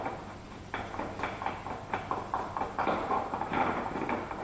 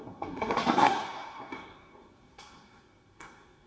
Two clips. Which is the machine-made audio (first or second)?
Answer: second